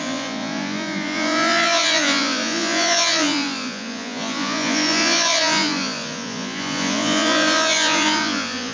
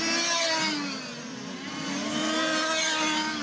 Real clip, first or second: second